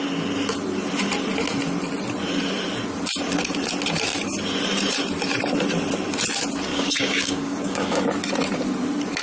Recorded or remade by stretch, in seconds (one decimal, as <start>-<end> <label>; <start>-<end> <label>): 0.0-6.7 recorded; 6.7-8.0 remade; 8.0-9.2 recorded